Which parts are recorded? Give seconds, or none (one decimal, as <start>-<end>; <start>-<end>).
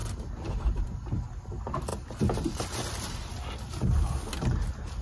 0.0-5.0